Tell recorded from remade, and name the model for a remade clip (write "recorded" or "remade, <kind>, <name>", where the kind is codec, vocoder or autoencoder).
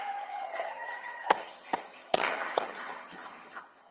remade, vocoder, HiFi-GAN